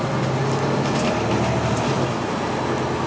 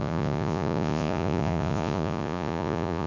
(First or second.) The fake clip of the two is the second